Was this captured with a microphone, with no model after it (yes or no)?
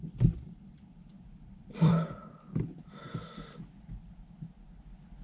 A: yes